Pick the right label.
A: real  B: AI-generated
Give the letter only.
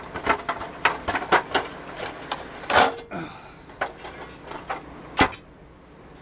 A